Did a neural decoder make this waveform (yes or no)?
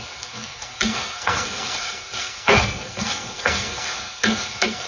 yes